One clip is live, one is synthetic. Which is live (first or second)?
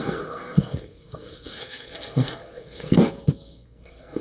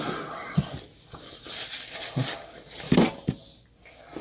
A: second